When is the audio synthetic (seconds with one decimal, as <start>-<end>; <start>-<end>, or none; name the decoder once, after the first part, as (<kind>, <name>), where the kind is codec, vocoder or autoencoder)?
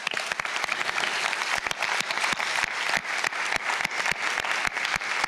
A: none